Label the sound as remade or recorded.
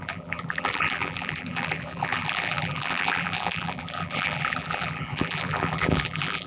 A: remade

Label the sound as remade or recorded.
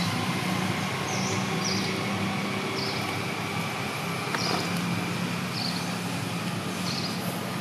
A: recorded